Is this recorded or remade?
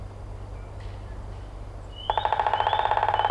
recorded